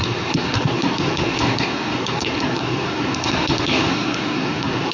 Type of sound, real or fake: fake